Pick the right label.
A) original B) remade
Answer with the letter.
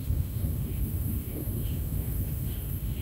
B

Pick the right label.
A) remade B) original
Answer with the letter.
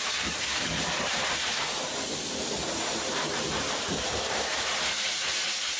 A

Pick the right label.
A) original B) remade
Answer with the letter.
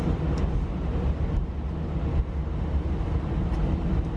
A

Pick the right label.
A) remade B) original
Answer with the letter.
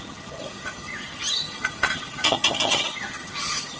A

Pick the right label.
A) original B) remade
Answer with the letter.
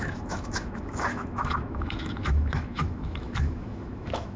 B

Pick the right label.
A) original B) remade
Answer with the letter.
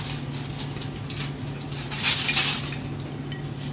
A